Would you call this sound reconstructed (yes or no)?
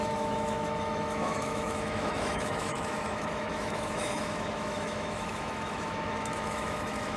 yes